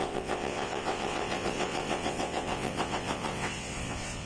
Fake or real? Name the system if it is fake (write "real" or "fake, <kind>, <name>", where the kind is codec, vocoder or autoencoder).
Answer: fake, vocoder, WaveNeXt